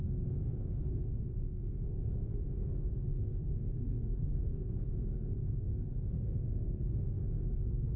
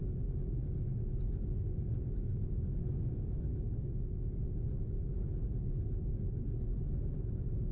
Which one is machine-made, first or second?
first